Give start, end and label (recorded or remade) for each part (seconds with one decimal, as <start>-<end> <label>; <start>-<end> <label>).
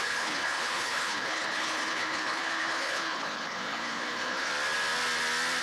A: 0.0-4.5 remade; 4.5-5.6 recorded